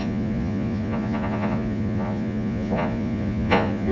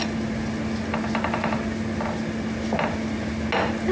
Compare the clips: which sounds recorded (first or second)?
second